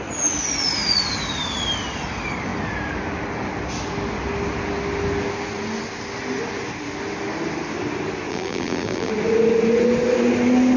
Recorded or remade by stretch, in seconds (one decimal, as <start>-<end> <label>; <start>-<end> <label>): 0.0-8.3 recorded; 8.3-9.1 remade; 9.1-10.8 recorded